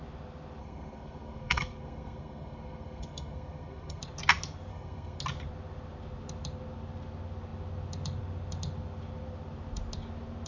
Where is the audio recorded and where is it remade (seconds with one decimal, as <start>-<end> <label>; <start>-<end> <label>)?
0.0-0.6 recorded; 0.6-4.0 remade; 4.0-4.7 recorded; 4.7-5.2 remade; 5.2-10.5 recorded